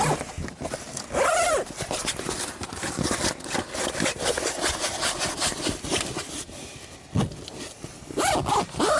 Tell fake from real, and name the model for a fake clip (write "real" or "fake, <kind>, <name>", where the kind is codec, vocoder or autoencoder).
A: real